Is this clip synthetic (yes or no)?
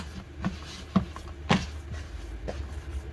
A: no